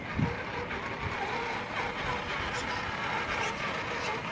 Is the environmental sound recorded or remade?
recorded